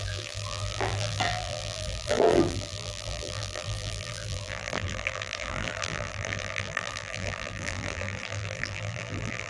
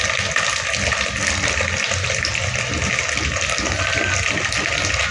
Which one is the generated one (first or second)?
first